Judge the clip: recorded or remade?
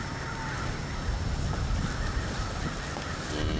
recorded